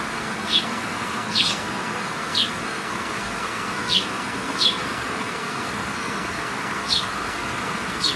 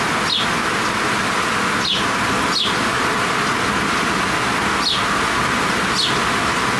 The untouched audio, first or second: second